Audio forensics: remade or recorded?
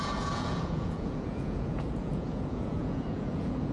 remade